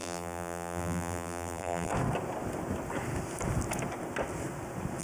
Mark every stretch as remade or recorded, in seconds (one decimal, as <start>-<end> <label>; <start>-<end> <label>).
0.0-1.9 remade; 1.9-5.0 recorded

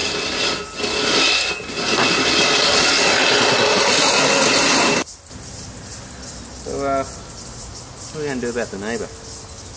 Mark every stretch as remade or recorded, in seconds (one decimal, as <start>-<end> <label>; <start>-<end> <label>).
0.0-9.8 recorded

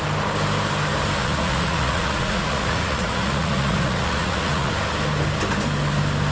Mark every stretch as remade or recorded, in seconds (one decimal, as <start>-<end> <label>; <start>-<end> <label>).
0.0-1.2 recorded; 1.2-4.7 remade; 4.7-6.3 recorded

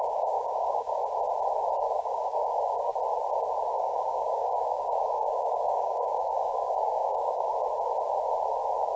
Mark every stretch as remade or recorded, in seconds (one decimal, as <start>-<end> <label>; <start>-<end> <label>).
0.0-1.0 remade; 1.0-1.8 recorded; 1.8-2.9 remade; 2.9-3.7 recorded; 3.7-7.5 remade; 7.5-9.0 recorded

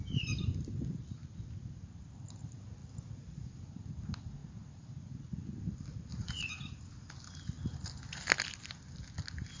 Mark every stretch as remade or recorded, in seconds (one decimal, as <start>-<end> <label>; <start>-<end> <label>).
0.0-6.1 recorded; 6.1-6.8 remade; 6.8-9.6 recorded

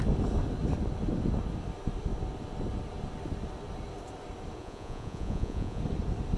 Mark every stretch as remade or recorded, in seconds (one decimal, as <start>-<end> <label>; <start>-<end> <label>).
0.0-4.6 recorded; 4.6-5.8 remade; 5.8-6.4 recorded

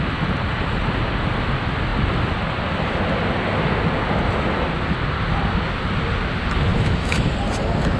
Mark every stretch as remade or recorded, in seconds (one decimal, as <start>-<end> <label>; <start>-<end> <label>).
0.0-6.7 recorded; 6.7-7.3 remade; 7.3-8.0 recorded